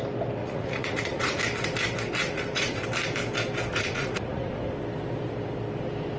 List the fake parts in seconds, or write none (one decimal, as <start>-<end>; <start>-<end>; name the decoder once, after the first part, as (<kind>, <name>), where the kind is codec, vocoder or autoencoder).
0.4-1.4 (vocoder, Vocos); 2.2-2.8; 3.7-4.5